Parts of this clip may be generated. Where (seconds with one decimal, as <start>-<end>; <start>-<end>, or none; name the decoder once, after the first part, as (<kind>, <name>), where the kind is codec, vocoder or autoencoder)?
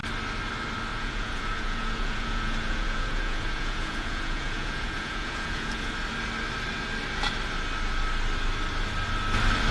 0.9-5.9 (vocoder, Vocos)